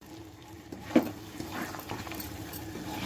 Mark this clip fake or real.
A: fake